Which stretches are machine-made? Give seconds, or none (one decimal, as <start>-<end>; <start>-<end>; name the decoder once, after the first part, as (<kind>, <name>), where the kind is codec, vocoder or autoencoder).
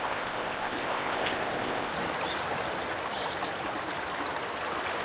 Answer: 0.0-1.9 (codec, ZipCodec)